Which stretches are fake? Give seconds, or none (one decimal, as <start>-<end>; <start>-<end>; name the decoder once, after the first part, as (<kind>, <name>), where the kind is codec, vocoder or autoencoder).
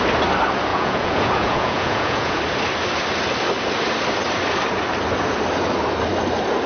0.7-2.4 (vocoder, Vocos)